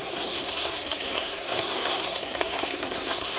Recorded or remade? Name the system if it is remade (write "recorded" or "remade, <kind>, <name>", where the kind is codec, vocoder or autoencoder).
remade, codec, SNAC